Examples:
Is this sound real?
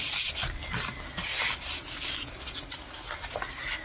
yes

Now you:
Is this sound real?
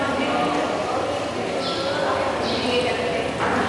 yes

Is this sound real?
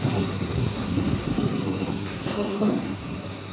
no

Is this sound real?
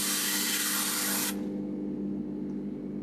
yes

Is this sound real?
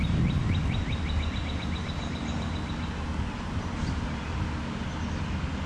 yes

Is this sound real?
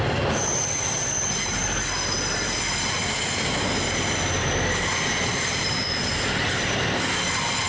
yes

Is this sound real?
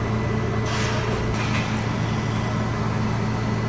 yes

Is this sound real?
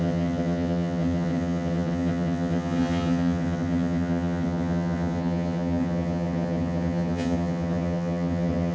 no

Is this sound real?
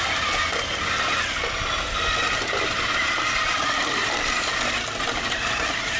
yes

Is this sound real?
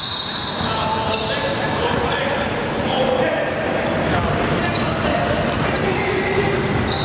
yes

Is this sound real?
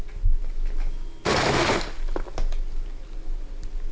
yes